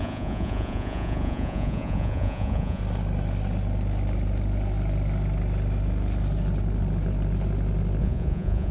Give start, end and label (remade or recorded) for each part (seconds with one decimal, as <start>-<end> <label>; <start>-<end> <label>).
0.0-2.8 remade; 2.8-8.0 recorded; 8.0-8.7 remade